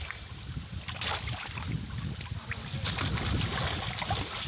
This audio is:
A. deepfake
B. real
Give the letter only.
B